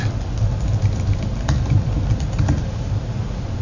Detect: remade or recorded recorded